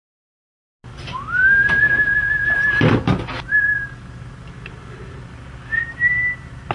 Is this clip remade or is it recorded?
recorded